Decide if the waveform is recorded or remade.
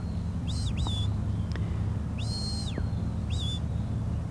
recorded